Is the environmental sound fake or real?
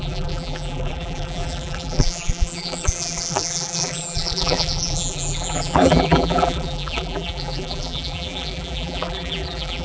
fake